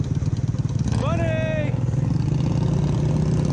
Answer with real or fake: real